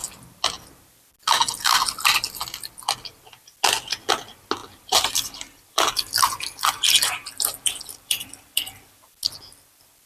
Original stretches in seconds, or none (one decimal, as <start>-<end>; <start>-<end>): 0.0-4.6; 9.1-10.1